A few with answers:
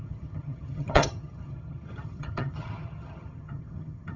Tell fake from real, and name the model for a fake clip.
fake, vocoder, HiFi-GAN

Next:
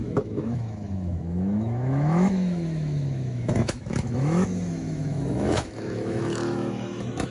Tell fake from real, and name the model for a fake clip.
fake, autoencoder, DAC-VAE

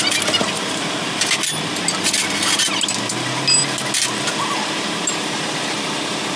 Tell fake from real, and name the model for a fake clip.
real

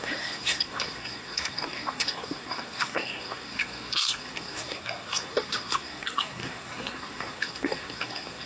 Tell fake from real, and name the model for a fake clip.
fake, codec, SNAC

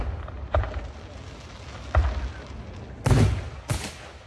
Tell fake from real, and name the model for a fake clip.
real